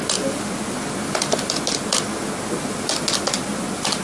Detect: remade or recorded recorded